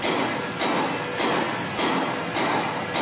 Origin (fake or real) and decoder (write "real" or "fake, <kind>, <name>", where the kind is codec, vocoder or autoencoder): real